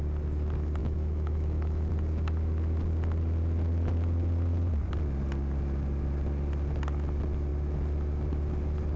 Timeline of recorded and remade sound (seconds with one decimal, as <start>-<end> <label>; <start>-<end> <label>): 0.0-0.8 recorded; 0.8-1.9 remade; 1.9-9.0 recorded